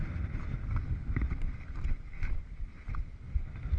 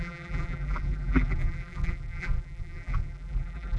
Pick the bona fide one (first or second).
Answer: first